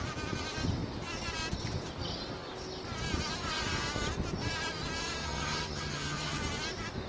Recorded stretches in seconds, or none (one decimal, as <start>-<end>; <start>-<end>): 0.0-5.2; 6.4-7.1